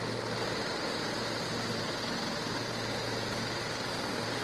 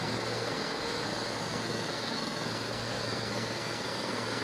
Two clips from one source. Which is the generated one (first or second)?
second